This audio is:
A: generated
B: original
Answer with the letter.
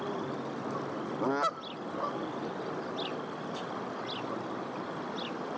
B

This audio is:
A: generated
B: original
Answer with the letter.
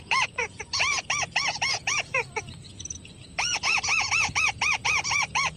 A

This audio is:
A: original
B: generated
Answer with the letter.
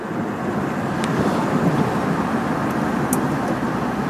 A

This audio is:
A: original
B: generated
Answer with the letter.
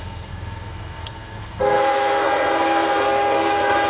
B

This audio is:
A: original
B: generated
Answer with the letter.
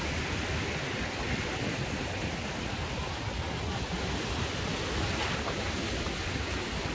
A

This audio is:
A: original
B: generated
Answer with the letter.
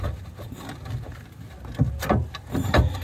A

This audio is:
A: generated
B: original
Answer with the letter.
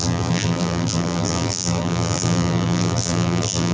A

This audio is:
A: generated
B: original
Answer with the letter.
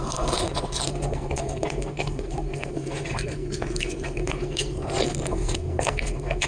A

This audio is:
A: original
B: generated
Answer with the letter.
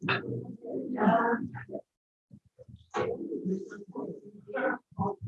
A